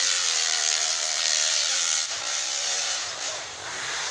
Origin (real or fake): fake